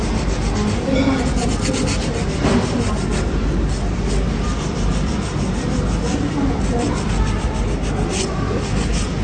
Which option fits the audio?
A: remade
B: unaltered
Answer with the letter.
B